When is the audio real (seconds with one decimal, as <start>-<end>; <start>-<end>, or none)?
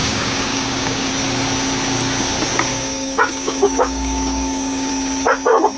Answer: 1.1-2.7; 4.9-5.8